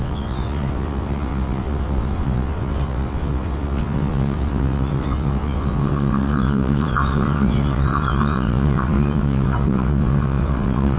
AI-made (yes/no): yes